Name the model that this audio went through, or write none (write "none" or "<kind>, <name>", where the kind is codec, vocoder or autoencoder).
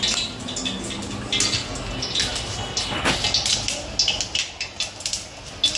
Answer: none